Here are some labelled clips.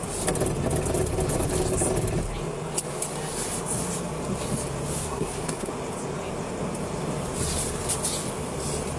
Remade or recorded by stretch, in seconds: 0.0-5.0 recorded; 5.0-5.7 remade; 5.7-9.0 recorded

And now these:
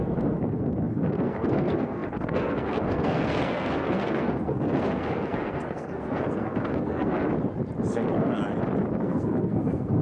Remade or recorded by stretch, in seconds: 0.0-7.3 remade; 7.3-7.9 recorded; 7.9-8.4 remade; 8.4-9.0 recorded; 9.0-10.0 remade

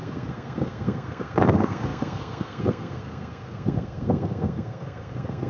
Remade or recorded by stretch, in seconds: 0.0-5.5 remade